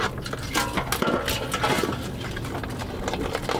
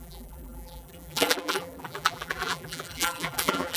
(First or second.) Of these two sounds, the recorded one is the first